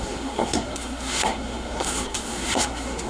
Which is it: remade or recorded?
remade